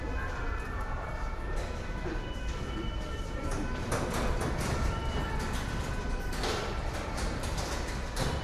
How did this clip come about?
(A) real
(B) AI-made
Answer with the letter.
B